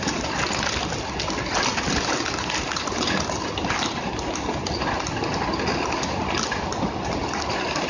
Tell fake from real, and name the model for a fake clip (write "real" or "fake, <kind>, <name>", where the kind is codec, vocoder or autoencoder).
real